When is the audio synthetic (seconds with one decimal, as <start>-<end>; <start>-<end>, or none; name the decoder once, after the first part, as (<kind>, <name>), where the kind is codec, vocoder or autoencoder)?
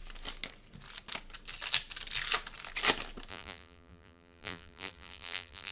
3.3-5.7 (vocoder, BigVGAN v2)